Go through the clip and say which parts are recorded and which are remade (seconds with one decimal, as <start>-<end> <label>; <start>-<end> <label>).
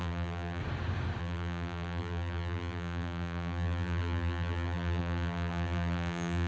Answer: 0.0-0.6 remade; 0.6-1.2 recorded; 1.2-6.5 remade